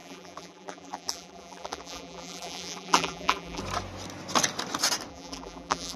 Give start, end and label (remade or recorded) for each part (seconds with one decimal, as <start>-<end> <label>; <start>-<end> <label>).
0.0-3.6 remade; 3.6-5.1 recorded; 5.1-6.0 remade